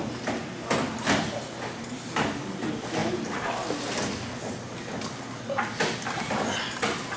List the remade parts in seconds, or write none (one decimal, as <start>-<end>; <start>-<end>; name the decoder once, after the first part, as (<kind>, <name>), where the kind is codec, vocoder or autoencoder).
none